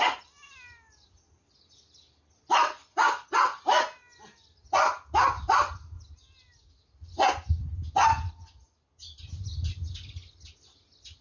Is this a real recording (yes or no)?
yes